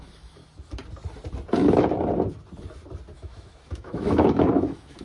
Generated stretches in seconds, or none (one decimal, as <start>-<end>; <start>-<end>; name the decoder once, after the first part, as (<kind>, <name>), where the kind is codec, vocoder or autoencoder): 0.0-0.4 (autoencoder, DAC-VAE); 3.1-5.0